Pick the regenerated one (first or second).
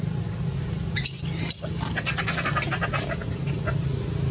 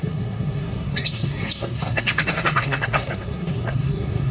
second